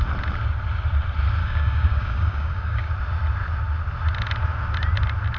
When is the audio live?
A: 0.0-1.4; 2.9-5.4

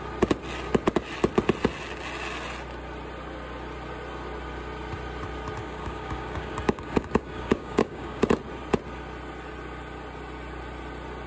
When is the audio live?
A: 0.0-5.6; 8.2-11.3